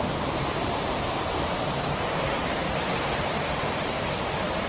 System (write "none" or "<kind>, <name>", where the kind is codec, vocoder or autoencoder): vocoder, BigVGAN v2